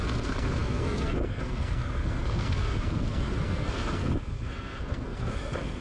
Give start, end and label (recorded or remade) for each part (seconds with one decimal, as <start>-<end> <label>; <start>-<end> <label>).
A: 0.0-5.8 remade